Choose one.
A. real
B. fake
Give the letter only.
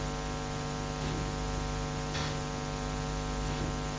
A